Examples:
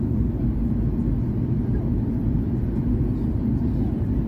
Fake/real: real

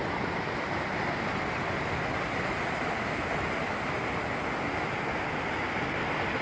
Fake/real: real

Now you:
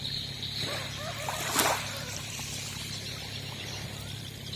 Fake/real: fake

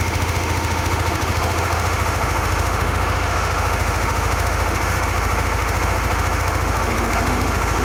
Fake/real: fake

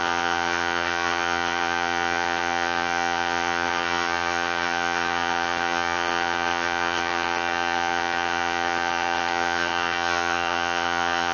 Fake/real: fake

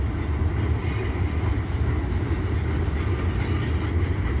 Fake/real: real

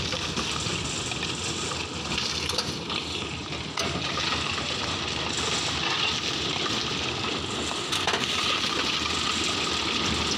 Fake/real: real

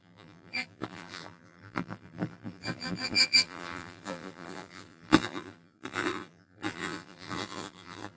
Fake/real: fake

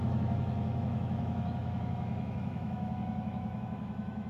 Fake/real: fake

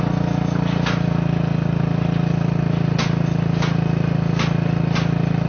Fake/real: real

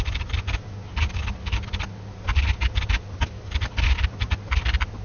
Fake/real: real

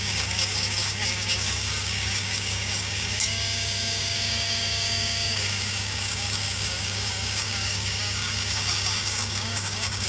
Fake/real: fake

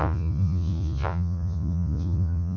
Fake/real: fake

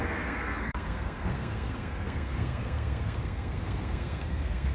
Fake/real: fake